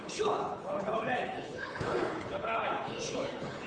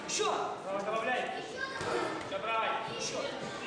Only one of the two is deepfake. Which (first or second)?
first